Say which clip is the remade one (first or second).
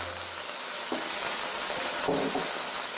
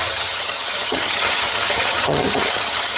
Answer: second